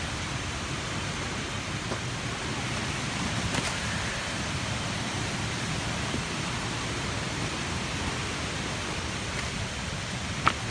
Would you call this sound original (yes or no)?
yes